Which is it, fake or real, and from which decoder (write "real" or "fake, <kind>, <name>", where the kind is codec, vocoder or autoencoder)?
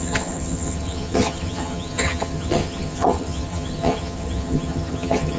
fake, vocoder, HiFi-GAN